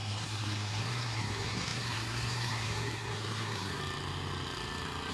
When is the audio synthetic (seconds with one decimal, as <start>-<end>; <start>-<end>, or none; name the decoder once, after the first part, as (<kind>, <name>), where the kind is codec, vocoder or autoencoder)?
0.0-3.8 (codec, SNAC)